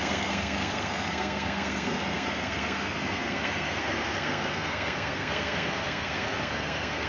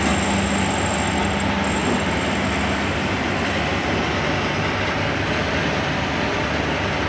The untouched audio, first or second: second